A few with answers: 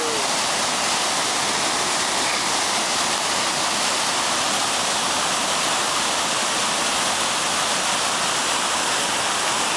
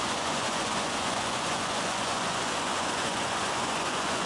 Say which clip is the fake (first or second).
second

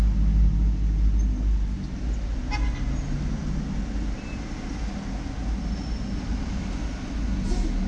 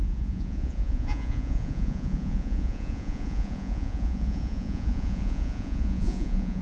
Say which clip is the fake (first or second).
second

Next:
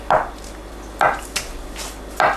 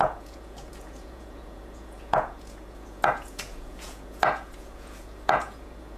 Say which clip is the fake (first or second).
second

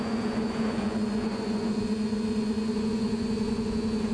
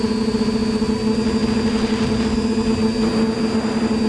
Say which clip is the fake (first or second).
first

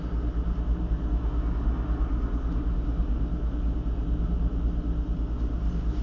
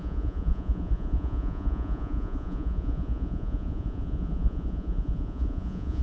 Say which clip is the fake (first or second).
second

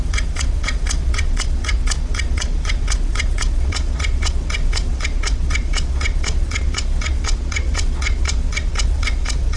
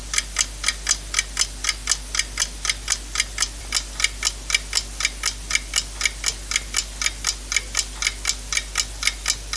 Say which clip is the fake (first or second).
first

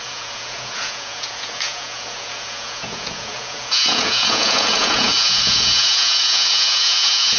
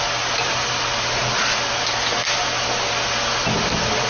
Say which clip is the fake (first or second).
first